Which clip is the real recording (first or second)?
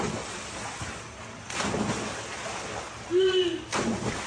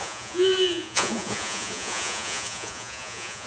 first